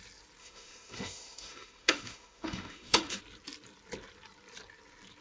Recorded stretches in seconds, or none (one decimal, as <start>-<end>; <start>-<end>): 0.0-0.4; 3.2-5.2